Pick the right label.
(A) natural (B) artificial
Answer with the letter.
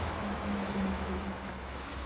B